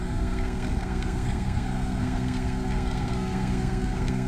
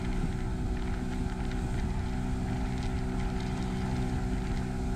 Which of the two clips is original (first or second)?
second